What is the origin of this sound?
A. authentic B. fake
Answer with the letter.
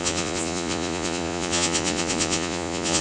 B